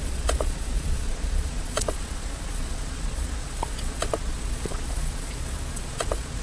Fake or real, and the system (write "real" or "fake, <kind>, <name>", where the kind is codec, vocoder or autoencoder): fake, vocoder, Vocos